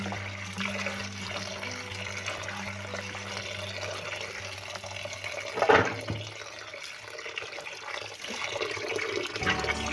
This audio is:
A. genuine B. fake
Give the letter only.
A